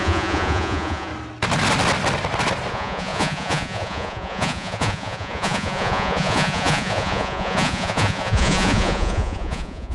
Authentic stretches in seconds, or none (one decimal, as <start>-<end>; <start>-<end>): 1.1-2.7